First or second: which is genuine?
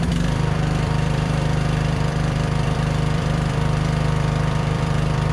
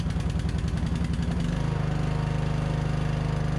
second